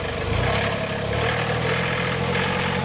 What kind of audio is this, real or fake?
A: real